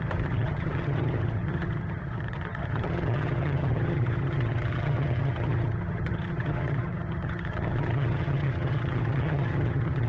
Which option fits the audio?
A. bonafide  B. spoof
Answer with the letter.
B